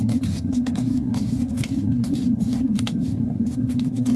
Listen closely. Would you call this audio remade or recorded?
remade